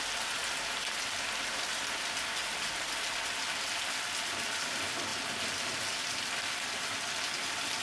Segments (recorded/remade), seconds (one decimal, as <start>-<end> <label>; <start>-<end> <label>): 0.0-7.8 recorded